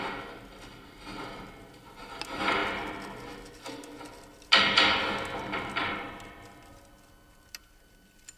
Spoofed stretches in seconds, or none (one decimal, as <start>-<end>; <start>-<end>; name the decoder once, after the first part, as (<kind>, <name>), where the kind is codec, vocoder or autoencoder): none